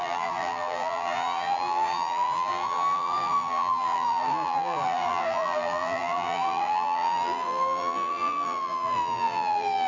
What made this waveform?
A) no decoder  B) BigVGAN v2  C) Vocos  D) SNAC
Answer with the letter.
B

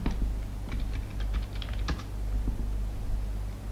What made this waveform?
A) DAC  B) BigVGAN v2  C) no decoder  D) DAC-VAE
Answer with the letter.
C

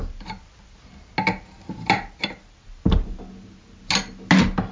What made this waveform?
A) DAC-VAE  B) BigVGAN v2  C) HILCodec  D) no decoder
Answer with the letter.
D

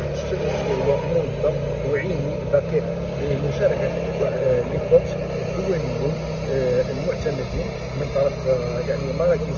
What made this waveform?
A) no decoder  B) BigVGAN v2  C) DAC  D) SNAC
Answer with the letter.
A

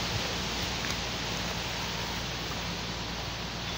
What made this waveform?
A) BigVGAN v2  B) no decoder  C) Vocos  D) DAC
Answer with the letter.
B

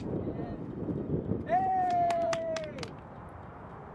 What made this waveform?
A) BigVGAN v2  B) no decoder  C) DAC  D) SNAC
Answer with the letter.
A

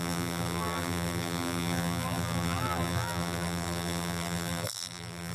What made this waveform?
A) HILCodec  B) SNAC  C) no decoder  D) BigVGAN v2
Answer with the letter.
D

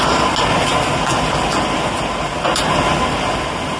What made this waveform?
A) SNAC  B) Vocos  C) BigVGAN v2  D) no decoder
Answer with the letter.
D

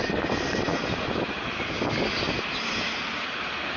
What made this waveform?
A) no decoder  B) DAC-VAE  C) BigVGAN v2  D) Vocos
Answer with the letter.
A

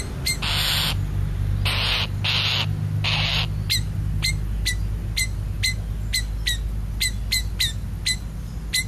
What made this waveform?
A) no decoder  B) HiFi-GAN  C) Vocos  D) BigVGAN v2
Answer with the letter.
A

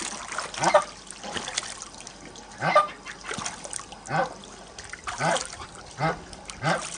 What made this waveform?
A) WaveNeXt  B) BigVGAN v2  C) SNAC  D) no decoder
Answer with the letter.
D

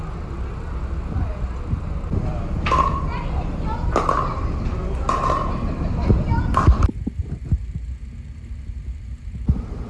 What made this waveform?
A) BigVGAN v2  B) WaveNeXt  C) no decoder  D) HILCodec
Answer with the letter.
C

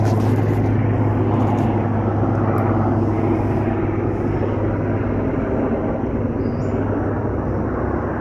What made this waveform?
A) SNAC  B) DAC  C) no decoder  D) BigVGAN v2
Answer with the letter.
C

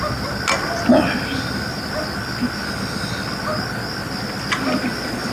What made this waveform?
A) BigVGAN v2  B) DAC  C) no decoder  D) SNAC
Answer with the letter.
C